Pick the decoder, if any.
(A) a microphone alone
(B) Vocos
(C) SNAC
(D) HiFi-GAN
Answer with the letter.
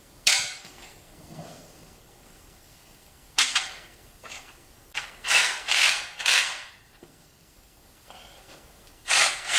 C